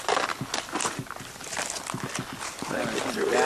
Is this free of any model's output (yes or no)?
yes